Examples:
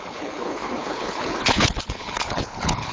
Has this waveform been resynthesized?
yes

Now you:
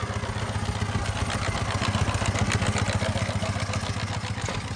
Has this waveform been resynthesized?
no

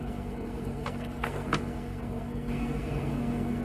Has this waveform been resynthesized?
yes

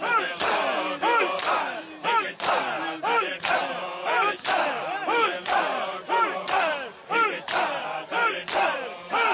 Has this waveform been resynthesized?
no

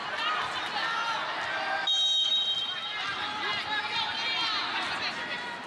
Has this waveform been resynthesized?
no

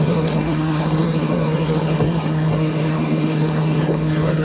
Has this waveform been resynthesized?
yes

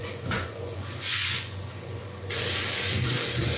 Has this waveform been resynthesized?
yes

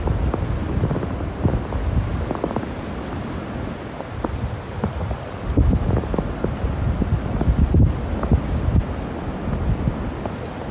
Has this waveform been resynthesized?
no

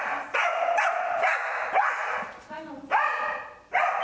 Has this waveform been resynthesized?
no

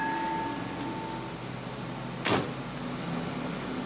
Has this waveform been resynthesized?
no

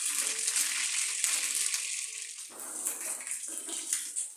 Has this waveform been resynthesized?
no